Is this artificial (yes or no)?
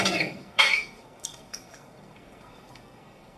yes